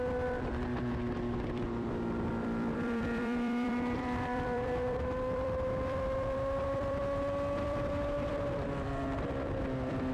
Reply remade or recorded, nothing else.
remade